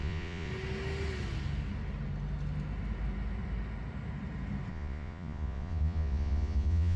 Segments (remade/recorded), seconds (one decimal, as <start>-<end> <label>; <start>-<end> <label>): 0.0-0.5 remade; 0.5-4.7 recorded; 4.7-7.0 remade